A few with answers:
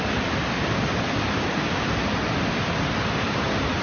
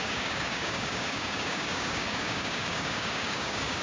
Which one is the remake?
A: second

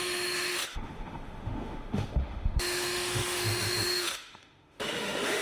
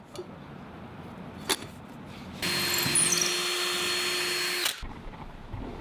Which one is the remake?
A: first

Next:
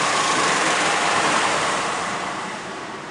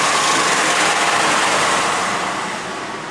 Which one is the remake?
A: first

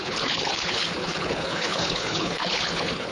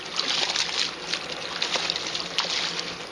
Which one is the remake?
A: first